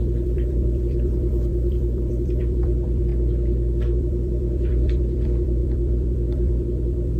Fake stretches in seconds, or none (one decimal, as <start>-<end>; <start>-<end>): 0.0-3.1; 4.0-7.2